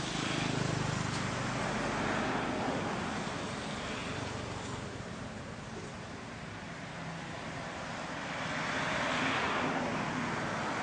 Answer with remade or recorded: recorded